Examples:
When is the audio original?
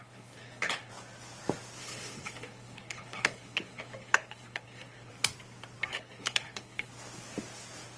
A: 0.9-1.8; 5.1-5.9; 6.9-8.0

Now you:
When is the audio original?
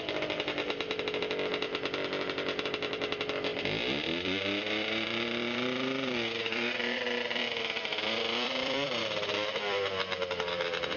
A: none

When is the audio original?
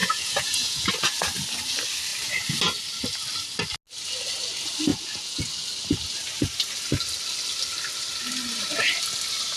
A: 0.9-4.9; 5.4-9.6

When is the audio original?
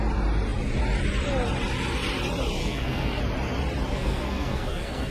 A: 0.0-2.6; 3.2-3.9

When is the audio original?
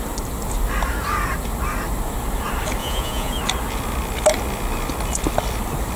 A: 0.0-2.8; 3.4-6.0